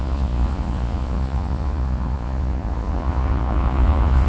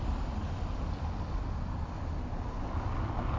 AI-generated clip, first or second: first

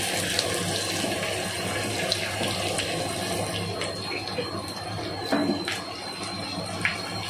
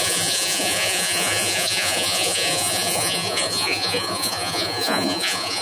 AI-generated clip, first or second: second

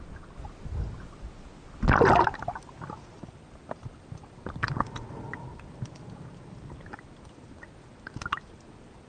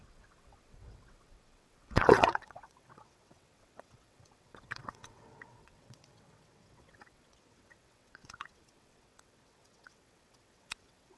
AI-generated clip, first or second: second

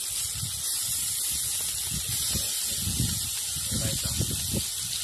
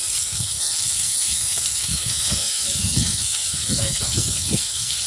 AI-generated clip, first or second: second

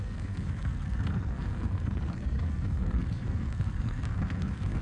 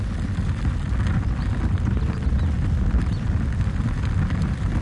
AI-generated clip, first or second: first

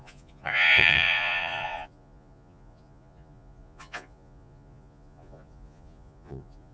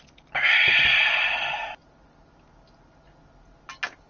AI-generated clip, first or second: first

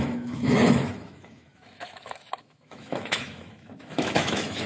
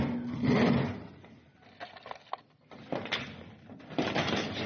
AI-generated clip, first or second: first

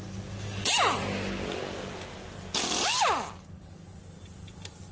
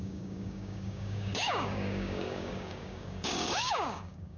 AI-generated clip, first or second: second